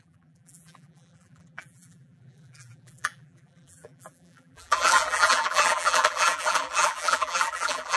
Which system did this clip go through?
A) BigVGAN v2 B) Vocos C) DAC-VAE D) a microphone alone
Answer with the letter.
A